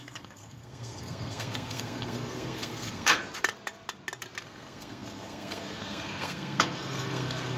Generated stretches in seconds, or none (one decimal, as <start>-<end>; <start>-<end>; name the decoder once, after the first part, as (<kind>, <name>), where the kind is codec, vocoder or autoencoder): 0.0-3.2 (codec, SNAC); 4.4-7.6